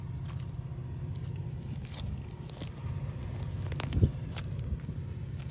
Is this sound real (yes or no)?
yes